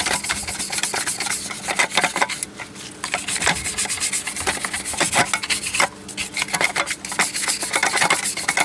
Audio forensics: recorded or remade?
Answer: recorded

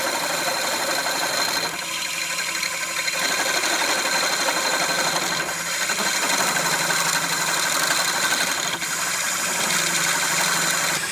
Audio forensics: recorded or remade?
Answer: recorded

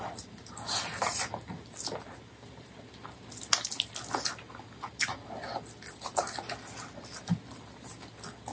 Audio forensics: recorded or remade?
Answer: recorded